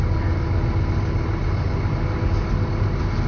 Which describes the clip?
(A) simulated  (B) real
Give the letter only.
B